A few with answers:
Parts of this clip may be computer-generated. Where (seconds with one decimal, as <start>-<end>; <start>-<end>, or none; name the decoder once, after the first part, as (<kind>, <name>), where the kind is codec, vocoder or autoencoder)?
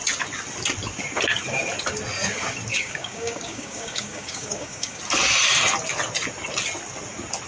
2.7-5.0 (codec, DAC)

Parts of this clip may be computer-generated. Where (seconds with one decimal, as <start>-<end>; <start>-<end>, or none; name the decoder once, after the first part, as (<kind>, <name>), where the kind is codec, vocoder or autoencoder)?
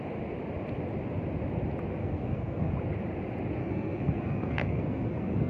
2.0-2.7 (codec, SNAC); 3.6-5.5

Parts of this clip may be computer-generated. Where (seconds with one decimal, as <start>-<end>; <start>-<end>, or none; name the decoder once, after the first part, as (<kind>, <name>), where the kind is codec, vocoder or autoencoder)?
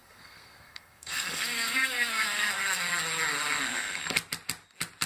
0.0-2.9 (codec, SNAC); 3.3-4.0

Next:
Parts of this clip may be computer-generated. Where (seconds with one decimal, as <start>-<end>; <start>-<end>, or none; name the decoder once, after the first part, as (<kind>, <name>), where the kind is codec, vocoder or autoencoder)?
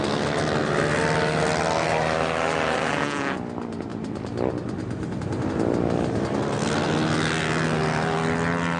none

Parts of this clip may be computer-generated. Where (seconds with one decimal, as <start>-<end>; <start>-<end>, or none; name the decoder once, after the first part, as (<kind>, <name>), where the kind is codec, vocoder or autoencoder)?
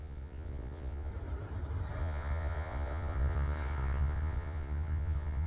0.0-1.1 (vocoder, Vocos); 2.0-5.5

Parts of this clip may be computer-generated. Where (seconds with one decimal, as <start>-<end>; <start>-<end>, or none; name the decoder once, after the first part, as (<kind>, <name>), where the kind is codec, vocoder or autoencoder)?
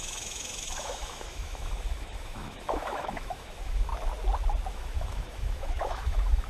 0.0-3.9 (autoencoder, DAC-VAE); 4.7-6.5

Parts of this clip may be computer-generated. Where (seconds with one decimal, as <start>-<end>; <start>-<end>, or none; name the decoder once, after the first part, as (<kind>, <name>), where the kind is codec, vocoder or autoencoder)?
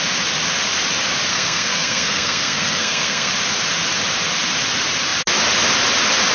1.3-3.3 (codec, SNAC)